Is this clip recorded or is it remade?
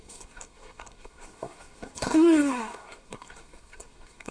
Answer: remade